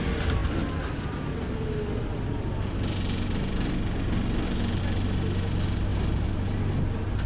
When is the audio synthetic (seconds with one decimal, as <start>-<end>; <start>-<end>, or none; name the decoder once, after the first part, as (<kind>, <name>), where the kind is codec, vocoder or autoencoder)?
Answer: none